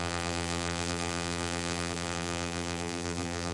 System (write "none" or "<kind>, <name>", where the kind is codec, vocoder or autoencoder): vocoder, BigVGAN v2